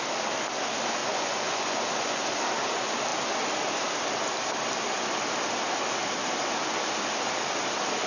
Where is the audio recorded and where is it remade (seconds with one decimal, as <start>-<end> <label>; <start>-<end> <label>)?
0.0-1.0 recorded; 1.0-2.2 remade; 2.2-8.1 recorded